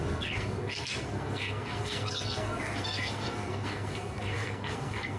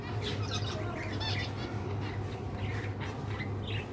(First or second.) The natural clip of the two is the second